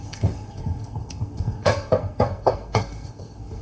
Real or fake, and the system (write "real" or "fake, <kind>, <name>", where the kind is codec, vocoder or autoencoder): fake, codec, SNAC